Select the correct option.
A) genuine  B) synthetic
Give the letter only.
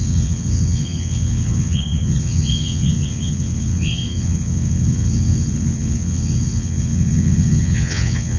B